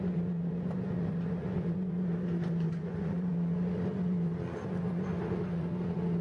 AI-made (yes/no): yes